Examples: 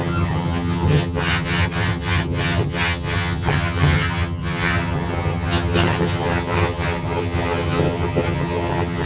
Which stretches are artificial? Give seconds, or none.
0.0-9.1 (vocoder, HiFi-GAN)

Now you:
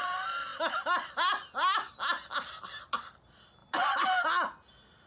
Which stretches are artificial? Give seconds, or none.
none

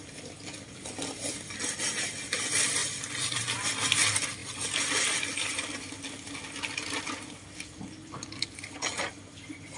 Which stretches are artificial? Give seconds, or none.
none

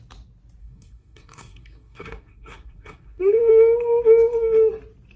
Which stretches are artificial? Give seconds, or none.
0.6-3.5 (codec, SNAC)

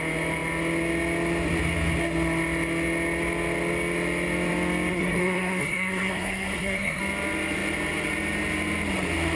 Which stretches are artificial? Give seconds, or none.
4.9-7.0 (codec, SNAC)

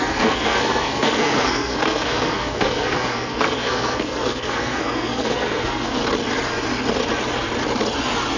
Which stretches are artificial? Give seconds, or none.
0.0-6.0 (codec, SNAC)